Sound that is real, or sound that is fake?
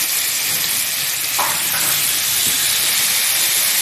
real